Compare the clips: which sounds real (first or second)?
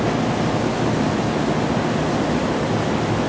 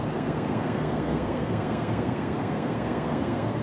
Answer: first